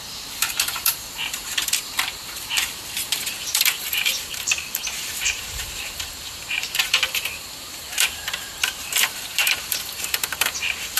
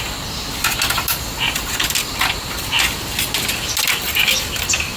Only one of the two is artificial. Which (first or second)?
first